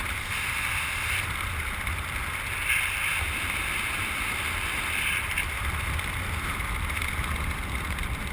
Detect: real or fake real